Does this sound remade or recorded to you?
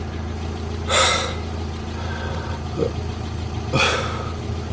recorded